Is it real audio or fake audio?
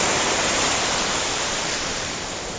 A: fake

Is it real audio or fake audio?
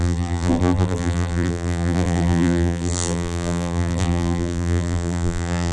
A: fake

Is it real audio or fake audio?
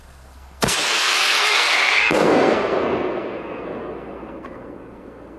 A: fake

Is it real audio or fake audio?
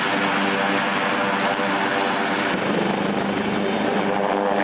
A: real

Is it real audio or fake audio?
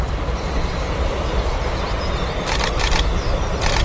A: real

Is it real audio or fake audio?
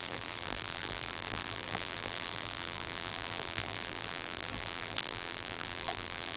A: fake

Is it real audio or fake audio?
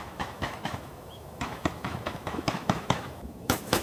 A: fake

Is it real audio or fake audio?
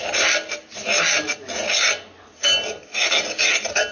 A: real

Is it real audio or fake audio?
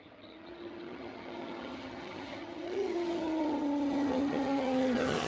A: fake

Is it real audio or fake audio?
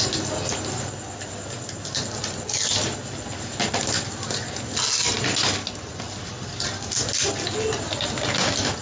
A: real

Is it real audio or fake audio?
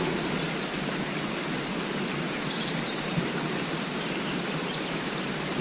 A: real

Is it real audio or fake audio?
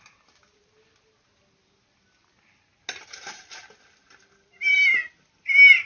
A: real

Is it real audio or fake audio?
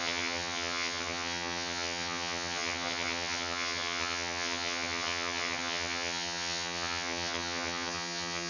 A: fake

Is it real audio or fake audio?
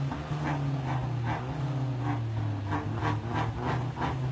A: real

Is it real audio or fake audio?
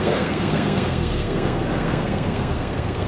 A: fake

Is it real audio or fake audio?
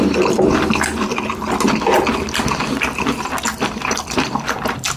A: fake